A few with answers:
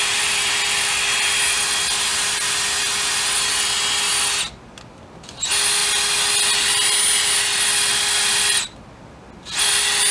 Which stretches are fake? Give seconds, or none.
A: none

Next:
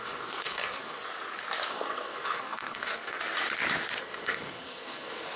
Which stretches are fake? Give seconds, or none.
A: 0.0-1.0 (codec, SNAC); 1.7-3.2; 4.0-5.4

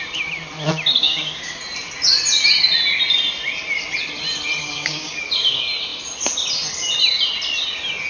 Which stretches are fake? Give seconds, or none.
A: 1.0-1.6 (codec, DAC); 4.6-5.2

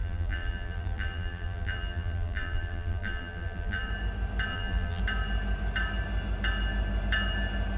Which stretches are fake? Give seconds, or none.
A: 0.0-3.9 (vocoder, BigVGAN v2); 4.5-5.0

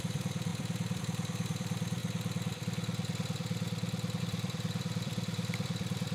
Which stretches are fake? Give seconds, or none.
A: 0.0-2.0 (vocoder, BigVGAN v2); 4.2-6.1

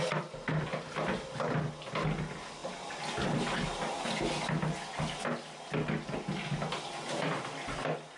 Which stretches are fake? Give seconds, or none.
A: none

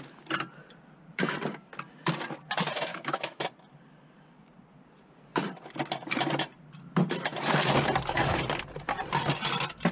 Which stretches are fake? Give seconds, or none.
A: 2.9-3.4 (autoencoder, DAC-VAE)

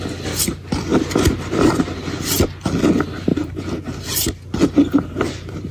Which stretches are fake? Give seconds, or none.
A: 0.9-1.8 (vocoder, BigVGAN v2); 3.3-4.0; 4.8-5.7